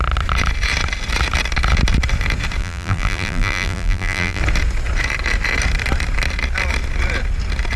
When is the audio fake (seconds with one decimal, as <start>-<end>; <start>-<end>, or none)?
2.6-4.4